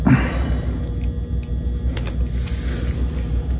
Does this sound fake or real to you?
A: real